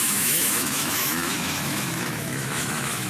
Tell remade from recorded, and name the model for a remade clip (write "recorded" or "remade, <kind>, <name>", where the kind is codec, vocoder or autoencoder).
remade, autoencoder, DAC-VAE